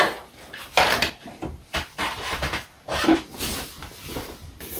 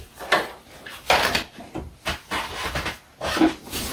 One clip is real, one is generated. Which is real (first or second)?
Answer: second